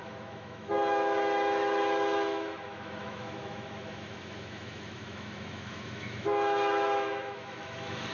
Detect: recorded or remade remade